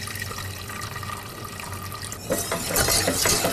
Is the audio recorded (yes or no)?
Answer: yes